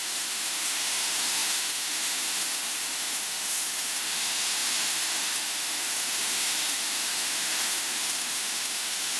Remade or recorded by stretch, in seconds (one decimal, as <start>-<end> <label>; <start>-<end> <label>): 0.0-9.2 remade